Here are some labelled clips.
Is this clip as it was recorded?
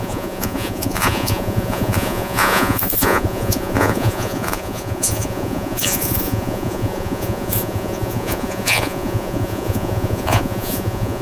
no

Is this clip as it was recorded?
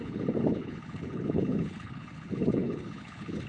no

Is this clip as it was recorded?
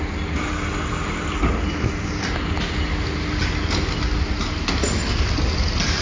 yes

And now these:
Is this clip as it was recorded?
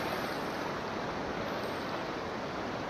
yes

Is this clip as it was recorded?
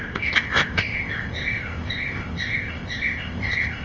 no